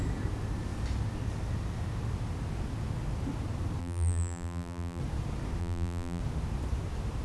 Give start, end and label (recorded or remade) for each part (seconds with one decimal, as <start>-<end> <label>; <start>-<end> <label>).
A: 0.0-3.8 recorded; 3.8-5.0 remade; 5.0-5.6 recorded; 5.6-6.2 remade; 6.2-7.2 recorded